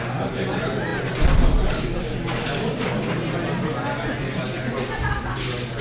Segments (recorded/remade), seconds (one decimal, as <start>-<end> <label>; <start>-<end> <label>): 0.0-5.8 recorded